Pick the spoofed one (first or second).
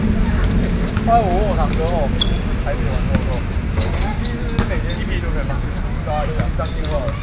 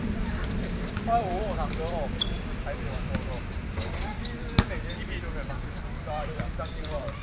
second